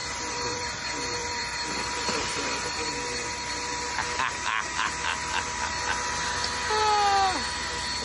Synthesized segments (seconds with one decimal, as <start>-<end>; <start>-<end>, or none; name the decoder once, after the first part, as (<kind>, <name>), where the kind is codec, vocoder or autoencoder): 0.0-0.7 (vocoder, BigVGAN v2); 1.2-2.9